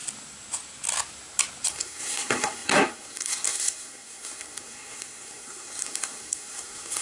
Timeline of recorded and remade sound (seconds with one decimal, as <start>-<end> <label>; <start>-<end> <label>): 0.0-1.7 recorded; 1.7-7.0 remade